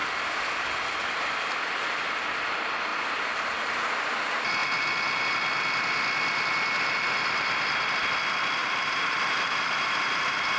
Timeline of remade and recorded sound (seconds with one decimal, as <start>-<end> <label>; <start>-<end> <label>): 0.0-8.6 recorded; 8.6-10.2 remade; 10.2-10.6 recorded

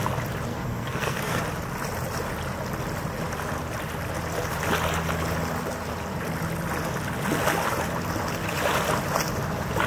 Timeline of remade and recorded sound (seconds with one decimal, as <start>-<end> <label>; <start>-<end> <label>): 0.0-0.5 recorded; 0.5-1.4 remade; 1.4-9.9 recorded

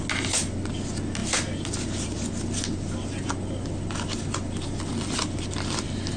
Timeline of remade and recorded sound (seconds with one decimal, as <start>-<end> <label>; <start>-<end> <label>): 0.0-6.2 recorded

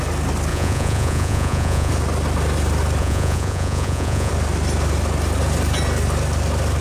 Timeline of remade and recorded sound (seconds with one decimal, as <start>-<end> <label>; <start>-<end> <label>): 0.0-0.5 recorded; 0.5-1.9 remade; 1.9-3.0 recorded; 3.0-4.3 remade; 4.3-6.8 recorded

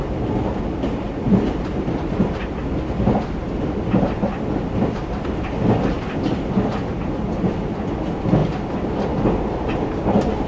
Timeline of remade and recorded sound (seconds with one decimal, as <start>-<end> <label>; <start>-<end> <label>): 0.0-10.5 recorded